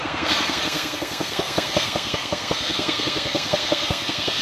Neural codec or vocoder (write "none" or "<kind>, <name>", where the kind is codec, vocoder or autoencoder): codec, SNAC